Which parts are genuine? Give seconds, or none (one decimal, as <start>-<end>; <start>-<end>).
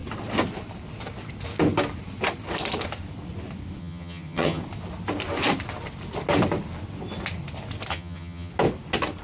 0.0-3.8; 4.6-7.9; 8.5-9.2